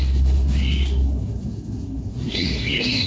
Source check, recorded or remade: remade